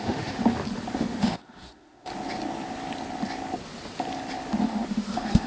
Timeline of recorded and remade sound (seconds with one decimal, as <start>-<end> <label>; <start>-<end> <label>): 0.0-0.4 remade; 0.4-1.0 recorded; 1.0-2.1 remade; 2.1-4.6 recorded; 4.6-5.5 remade